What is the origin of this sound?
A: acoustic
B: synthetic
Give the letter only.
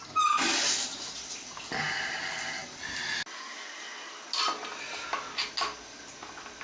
A